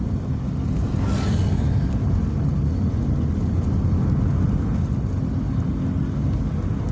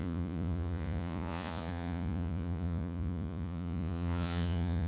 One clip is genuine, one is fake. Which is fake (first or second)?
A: second